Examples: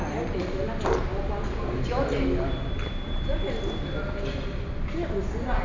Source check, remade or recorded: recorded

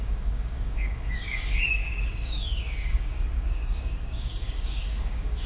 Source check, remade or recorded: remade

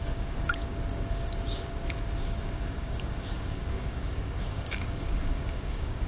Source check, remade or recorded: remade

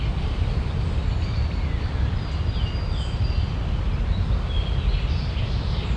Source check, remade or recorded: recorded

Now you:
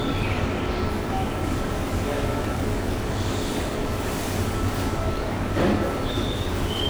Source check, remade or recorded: remade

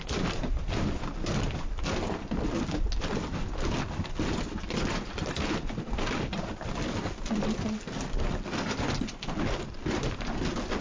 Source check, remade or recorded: recorded